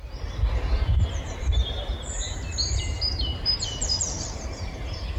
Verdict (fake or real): fake